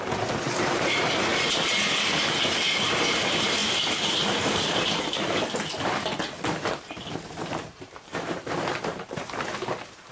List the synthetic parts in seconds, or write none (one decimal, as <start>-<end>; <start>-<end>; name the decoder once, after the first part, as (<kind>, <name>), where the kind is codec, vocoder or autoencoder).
0.0-1.3 (vocoder, BigVGAN v2); 2.8-10.1